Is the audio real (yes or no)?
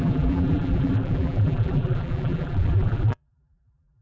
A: no